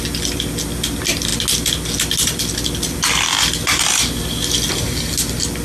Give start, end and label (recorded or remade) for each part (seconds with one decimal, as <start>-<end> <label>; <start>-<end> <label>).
0.0-5.6 recorded